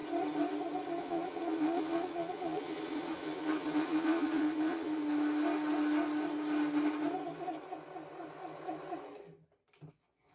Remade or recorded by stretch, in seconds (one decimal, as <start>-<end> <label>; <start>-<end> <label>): 0.0-1.0 recorded; 1.0-5.0 remade; 5.0-9.9 recorded; 9.9-10.3 remade